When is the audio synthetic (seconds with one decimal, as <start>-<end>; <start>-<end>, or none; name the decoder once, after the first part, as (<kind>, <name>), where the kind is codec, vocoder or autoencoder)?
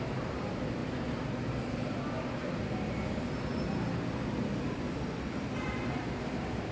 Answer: 0.0-2.4 (vocoder, BigVGAN v2); 4.6-6.7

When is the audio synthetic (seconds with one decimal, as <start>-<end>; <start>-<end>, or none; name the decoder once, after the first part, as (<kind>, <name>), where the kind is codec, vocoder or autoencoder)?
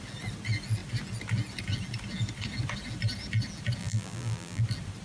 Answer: 3.8-4.6 (vocoder, BigVGAN v2)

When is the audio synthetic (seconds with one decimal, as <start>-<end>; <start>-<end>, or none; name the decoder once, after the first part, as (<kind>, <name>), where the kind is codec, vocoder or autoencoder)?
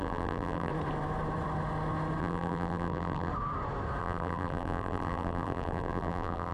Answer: 0.0-0.7 (vocoder, BigVGAN v2); 2.2-3.3; 4.0-6.5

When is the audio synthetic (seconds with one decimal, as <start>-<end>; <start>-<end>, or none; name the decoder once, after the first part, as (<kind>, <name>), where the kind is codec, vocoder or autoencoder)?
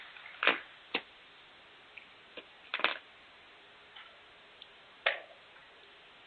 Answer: none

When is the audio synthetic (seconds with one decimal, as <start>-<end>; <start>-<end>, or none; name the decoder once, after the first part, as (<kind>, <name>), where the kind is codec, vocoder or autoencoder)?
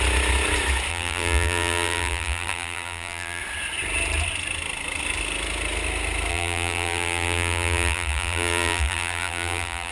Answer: 0.9-3.4 (vocoder, BigVGAN v2); 6.3-9.9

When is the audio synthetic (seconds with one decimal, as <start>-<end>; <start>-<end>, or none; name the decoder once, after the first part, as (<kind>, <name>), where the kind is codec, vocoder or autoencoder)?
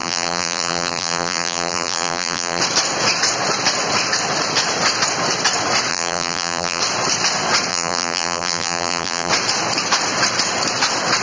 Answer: 0.0-2.6 (vocoder, BigVGAN v2); 5.9-6.8; 7.7-9.3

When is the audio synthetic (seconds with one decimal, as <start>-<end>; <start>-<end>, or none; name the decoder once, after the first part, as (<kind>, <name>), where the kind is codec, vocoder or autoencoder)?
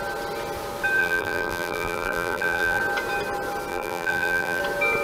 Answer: 1.0-2.8 (vocoder, BigVGAN v2); 3.7-4.6